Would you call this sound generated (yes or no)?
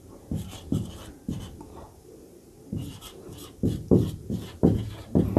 yes